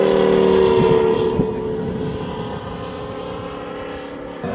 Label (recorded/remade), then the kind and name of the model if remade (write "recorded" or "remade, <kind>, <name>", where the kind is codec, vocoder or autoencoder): recorded